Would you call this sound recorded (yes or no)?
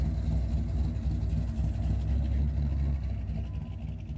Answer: yes